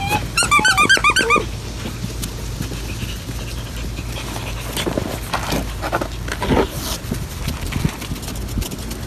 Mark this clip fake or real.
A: real